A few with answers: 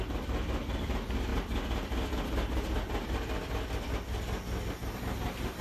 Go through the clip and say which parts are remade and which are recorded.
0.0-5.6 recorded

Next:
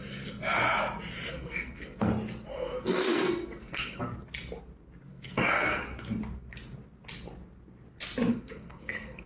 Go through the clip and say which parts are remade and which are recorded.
0.0-1.3 recorded; 1.3-2.1 remade; 2.1-2.5 recorded; 2.5-4.0 remade; 4.0-5.1 recorded; 5.1-5.8 remade; 5.8-8.3 recorded; 8.3-9.3 remade